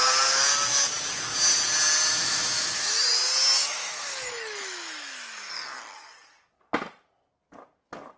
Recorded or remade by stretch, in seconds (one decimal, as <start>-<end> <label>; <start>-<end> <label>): 0.0-2.2 recorded; 2.2-3.0 remade; 3.0-3.6 recorded; 3.6-5.5 remade; 5.5-8.2 recorded